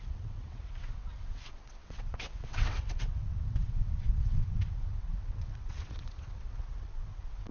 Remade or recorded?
remade